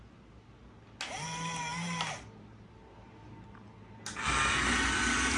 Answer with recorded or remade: recorded